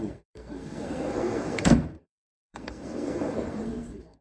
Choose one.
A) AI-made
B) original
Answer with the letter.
A